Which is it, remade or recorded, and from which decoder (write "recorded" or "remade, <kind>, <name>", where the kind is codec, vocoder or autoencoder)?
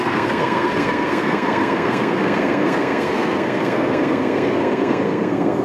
remade, codec, SNAC